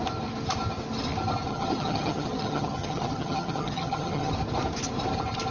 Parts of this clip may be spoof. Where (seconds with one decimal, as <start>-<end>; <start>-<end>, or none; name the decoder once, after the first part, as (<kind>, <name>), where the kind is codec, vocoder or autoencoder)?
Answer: 1.5-4.3 (vocoder, HiFi-GAN)